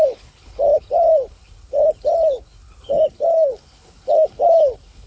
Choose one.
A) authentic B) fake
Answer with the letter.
B